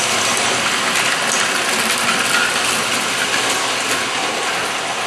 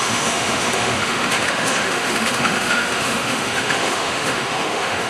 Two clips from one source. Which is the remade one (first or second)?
second